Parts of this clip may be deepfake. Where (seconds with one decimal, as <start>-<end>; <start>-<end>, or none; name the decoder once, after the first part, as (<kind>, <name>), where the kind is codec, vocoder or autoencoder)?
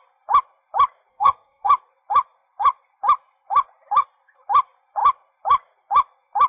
1.1-1.7 (codec, SNAC)